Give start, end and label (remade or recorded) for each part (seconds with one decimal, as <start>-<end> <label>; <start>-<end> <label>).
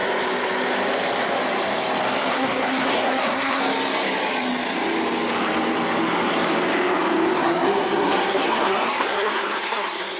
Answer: 0.0-2.3 recorded; 2.3-3.6 remade; 3.6-7.4 recorded; 7.4-10.2 remade